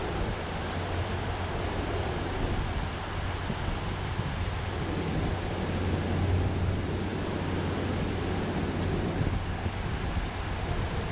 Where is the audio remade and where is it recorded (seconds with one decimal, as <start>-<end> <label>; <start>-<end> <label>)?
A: 0.0-11.1 recorded